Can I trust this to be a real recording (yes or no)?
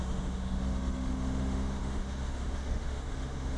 no